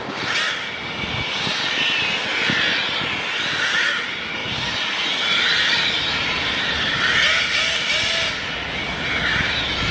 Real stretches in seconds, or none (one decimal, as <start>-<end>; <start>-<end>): 0.0-9.9